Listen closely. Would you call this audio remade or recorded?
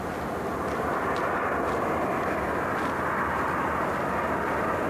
recorded